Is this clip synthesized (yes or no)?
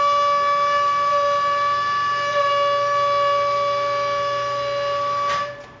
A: no